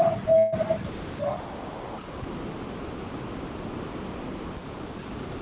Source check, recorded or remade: recorded